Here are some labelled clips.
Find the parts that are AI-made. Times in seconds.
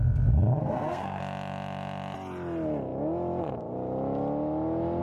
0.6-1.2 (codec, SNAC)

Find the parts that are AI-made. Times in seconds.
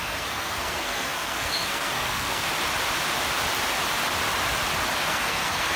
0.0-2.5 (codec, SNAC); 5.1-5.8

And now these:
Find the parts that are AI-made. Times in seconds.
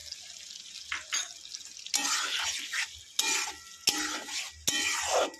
none